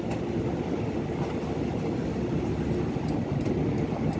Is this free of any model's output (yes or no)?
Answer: yes